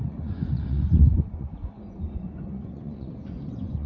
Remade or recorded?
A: remade